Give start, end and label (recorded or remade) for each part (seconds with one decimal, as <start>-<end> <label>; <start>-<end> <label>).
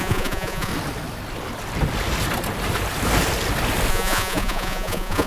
0.0-0.7 remade; 0.7-3.9 recorded; 3.9-5.3 remade